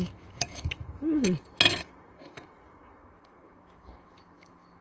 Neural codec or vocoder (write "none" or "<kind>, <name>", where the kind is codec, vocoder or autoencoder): autoencoder, DAC-VAE